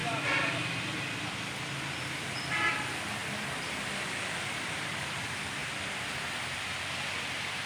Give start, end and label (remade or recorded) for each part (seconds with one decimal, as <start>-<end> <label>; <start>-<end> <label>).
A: 0.0-2.0 recorded; 2.0-5.6 remade; 5.6-7.2 recorded; 7.2-7.7 remade